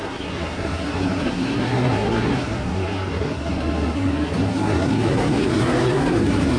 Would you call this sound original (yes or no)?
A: no